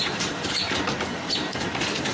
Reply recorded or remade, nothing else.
recorded